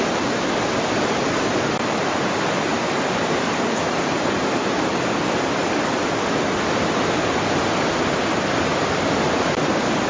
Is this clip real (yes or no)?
yes